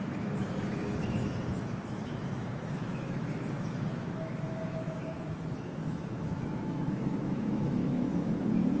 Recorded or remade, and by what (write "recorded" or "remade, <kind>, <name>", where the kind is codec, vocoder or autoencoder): remade, autoencoder, DAC-VAE